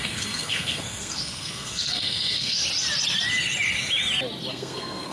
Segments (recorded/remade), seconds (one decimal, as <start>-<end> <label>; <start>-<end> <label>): 0.0-2.6 remade; 2.6-4.5 recorded; 4.5-5.1 remade